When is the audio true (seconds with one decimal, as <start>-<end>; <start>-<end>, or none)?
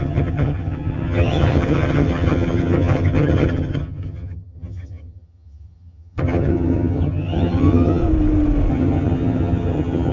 8.0-8.7